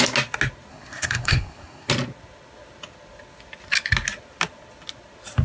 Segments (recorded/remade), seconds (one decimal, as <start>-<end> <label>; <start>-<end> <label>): 0.0-0.7 recorded; 0.7-1.9 remade; 1.9-5.4 recorded